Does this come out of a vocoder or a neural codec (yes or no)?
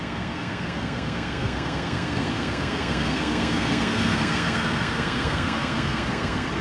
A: yes